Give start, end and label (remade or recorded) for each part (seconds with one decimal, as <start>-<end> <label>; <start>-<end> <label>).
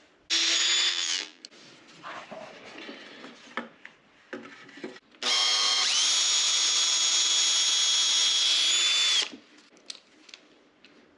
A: 0.0-0.9 recorded; 0.9-1.4 remade; 1.4-11.2 recorded